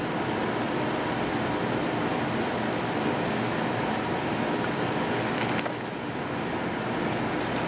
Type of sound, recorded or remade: recorded